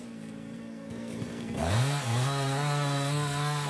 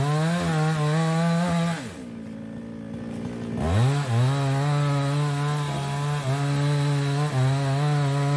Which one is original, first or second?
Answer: second